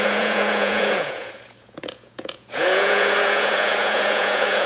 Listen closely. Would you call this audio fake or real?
fake